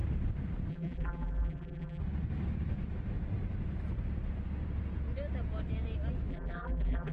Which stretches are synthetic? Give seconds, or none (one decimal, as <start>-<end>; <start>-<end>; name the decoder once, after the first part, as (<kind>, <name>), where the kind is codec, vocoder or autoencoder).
0.7-2.0 (vocoder, BigVGAN v2); 6.3-7.1